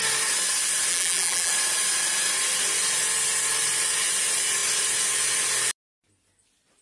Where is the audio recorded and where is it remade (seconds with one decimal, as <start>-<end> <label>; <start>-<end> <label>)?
0.0-0.9 recorded; 0.9-1.5 remade; 1.5-6.8 recorded